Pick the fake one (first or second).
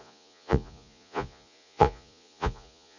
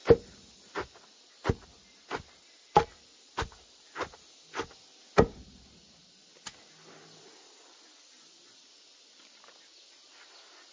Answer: first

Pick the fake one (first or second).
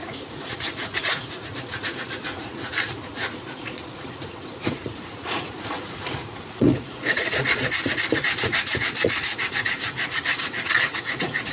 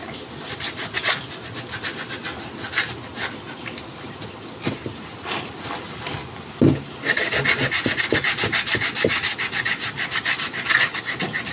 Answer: first